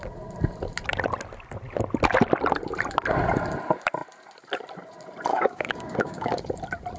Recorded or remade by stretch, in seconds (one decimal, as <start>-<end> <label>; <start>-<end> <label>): 0.0-5.3 recorded; 5.3-6.4 remade; 6.4-7.0 recorded